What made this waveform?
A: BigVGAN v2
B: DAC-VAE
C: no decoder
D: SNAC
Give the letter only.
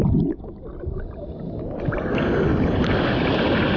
C